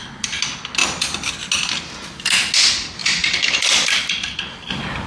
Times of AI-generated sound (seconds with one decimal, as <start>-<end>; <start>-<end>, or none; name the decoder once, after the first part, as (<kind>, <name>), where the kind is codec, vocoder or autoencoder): 3.0-5.1 (vocoder, BigVGAN v2)